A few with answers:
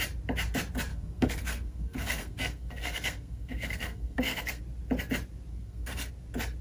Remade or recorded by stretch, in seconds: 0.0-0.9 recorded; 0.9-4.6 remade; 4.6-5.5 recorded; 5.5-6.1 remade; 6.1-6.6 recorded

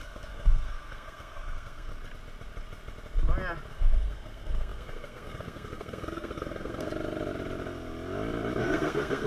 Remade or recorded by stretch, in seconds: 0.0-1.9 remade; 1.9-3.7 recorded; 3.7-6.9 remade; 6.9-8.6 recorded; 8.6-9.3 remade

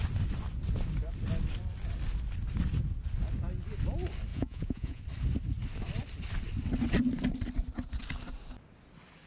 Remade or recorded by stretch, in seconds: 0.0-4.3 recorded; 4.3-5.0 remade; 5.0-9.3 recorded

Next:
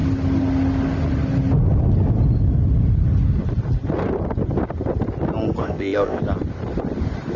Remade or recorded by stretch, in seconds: 0.0-5.6 recorded; 5.6-6.2 remade; 6.2-7.4 recorded

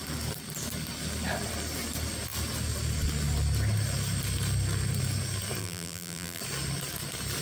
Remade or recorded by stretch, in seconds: 0.0-5.6 recorded; 5.6-6.4 remade; 6.4-7.4 recorded

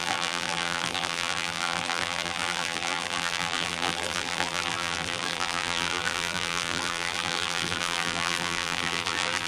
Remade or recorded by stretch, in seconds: 0.0-9.5 remade